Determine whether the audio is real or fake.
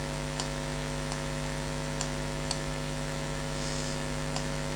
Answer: fake